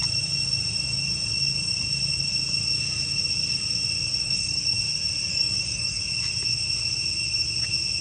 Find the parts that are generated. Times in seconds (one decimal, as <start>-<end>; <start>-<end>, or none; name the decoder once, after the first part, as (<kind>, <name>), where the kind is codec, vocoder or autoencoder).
4.2-4.8 (codec, DAC); 5.3-6.0